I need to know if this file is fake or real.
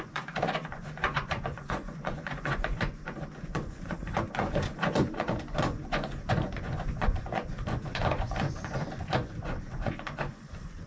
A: fake